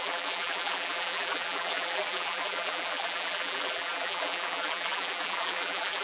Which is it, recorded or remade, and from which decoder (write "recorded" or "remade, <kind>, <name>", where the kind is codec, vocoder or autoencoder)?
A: remade, vocoder, BigVGAN v2